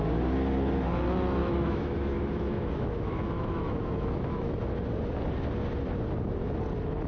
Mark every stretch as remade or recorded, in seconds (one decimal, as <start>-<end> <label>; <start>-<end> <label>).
0.0-1.4 recorded; 1.4-4.6 remade; 4.6-7.1 recorded